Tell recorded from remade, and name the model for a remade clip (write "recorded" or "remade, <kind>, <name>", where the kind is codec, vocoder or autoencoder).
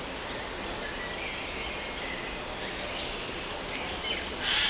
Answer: recorded